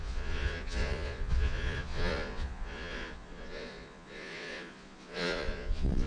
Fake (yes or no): yes